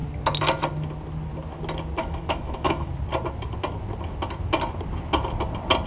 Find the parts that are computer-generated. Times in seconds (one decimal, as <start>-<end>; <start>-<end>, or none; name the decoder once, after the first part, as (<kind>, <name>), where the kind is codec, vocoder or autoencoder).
2.0-2.9 (autoencoder, DAC-VAE)